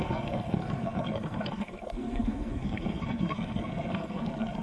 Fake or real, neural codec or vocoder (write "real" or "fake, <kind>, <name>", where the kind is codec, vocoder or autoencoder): fake, codec, SNAC